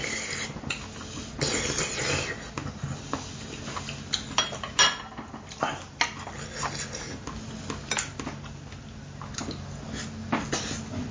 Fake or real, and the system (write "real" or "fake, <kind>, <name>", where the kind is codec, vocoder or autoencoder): real